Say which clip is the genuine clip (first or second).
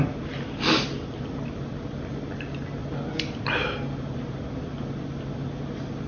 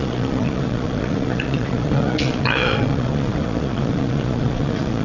first